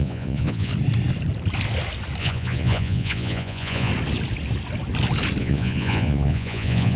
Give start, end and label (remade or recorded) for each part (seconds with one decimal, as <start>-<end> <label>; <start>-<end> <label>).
0.0-0.7 remade; 0.7-2.2 recorded; 2.2-3.9 remade; 3.9-5.4 recorded; 5.4-7.0 remade